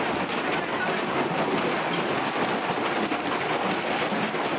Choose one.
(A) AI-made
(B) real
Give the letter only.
B